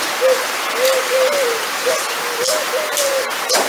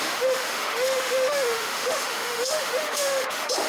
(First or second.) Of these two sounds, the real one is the first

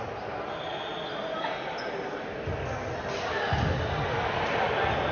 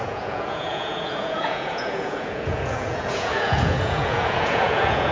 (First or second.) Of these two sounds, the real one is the first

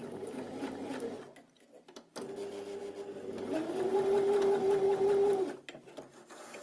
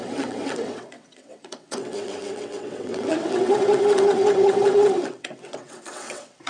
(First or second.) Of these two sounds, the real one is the first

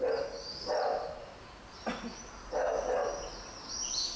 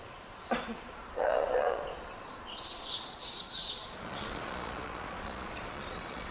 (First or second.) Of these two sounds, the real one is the first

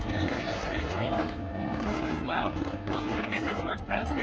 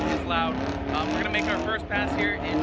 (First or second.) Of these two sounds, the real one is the second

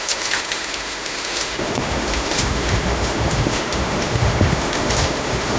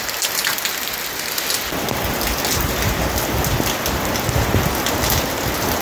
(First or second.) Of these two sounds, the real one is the second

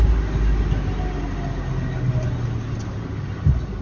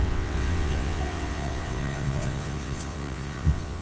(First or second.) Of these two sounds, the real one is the first